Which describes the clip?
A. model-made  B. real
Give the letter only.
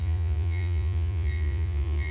A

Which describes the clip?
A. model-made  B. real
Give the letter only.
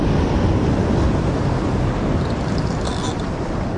B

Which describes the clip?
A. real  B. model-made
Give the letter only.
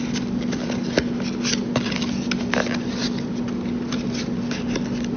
A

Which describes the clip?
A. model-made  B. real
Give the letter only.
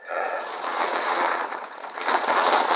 A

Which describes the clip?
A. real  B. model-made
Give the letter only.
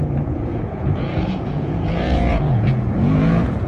B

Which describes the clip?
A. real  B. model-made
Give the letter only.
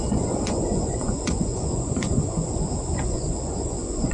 B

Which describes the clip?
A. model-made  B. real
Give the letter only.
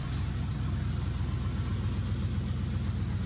B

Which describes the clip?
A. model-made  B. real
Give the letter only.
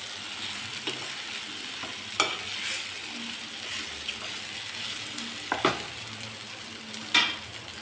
B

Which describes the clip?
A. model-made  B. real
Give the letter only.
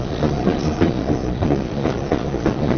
A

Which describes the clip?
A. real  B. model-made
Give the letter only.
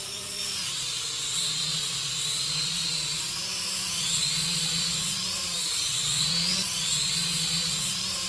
B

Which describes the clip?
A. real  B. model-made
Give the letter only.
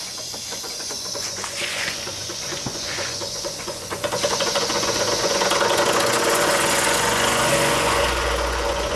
B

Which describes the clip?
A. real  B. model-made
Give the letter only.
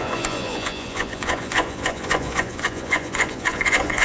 B